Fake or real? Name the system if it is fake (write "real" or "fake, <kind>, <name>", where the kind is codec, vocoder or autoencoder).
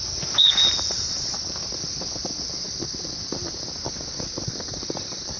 real